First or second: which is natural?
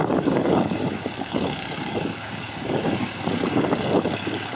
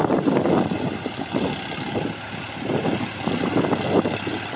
second